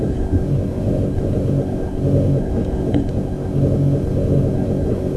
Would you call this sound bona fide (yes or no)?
no